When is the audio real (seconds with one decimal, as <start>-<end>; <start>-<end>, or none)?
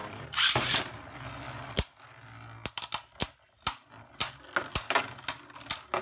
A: 0.8-6.0